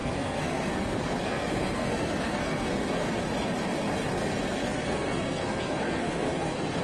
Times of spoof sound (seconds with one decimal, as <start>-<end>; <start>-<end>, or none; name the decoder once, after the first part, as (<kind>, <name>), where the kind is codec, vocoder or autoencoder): 0.0-3.2 (codec, SNAC); 4.1-6.8